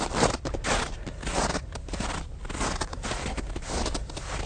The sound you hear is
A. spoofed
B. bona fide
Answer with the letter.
B